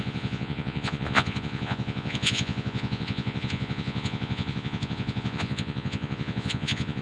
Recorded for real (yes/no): no